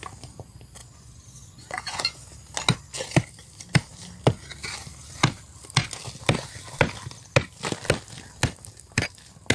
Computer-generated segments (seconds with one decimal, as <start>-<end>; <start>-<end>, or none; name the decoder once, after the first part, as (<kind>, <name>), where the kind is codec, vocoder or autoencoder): 0.8-2.3 (vocoder, Vocos)